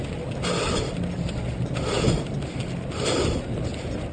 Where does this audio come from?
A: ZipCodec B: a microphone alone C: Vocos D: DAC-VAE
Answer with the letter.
B